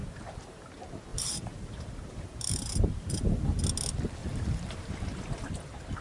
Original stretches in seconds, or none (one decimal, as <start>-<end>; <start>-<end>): 0.7-1.1; 3.6-4.2; 4.9-6.0